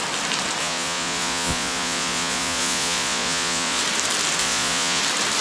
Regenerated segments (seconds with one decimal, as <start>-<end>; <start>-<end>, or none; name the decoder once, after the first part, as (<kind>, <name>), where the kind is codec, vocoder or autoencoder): 0.6-3.8 (vocoder, Vocos); 4.4-5.0